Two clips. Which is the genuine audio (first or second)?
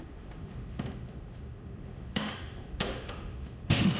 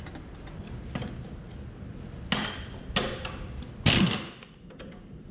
second